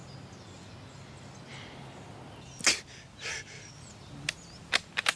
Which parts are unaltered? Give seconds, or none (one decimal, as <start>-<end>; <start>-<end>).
0.0-5.2